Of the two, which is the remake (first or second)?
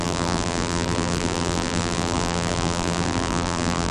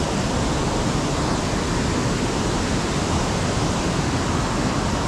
first